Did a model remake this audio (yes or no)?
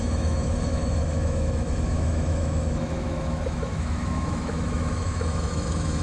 yes